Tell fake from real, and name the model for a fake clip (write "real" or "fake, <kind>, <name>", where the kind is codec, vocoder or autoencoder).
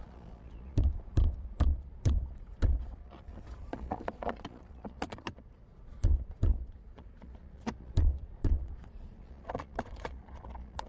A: fake, vocoder, Vocos